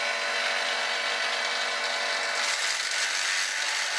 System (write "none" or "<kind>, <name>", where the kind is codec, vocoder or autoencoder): none